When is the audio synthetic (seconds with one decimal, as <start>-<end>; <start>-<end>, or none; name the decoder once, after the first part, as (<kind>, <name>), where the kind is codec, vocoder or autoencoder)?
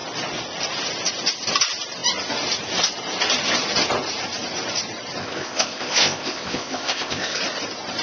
5.2-7.4 (codec, ZipCodec)